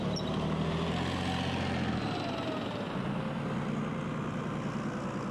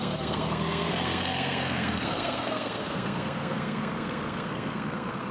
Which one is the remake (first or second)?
second